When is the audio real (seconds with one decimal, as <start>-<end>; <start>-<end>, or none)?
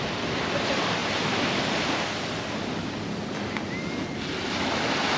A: 0.0-5.2